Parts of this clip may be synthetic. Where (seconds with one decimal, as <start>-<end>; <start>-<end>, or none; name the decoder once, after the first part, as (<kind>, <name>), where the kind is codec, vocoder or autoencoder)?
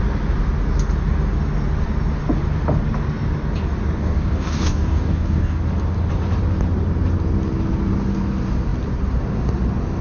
4.0-5.6 (codec, DAC)